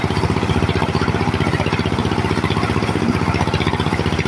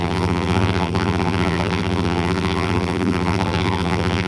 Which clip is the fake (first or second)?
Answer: second